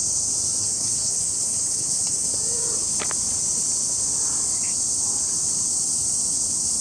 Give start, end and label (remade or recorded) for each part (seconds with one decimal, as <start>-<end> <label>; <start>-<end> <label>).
0.0-0.6 recorded; 0.6-2.3 remade; 2.3-6.8 recorded